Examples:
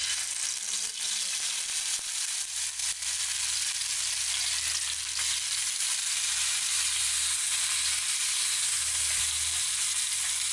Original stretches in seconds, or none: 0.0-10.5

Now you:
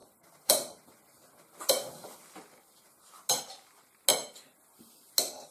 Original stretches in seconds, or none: 3.3-5.5

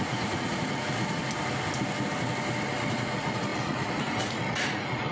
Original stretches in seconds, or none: 1.2-2.9